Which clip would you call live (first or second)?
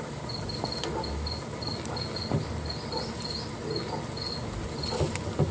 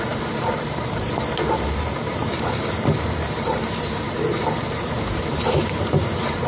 first